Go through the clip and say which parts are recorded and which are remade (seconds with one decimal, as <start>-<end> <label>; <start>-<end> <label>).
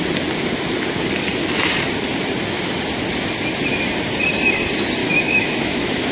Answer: 0.0-5.0 recorded; 5.0-6.1 remade